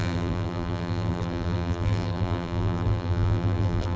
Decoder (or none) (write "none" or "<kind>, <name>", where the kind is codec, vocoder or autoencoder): vocoder, BigVGAN v2